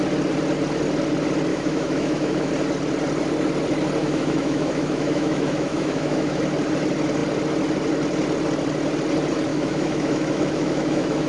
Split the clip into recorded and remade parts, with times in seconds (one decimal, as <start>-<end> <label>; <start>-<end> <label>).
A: 0.0-1.5 recorded; 1.5-2.5 remade; 2.5-4.0 recorded; 4.0-6.4 remade; 6.4-9.5 recorded; 9.5-11.3 remade